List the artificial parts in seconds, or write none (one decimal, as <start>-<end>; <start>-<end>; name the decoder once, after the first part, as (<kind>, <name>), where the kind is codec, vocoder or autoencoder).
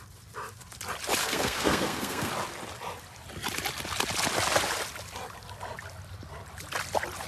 1.2-2.3 (codec, SNAC)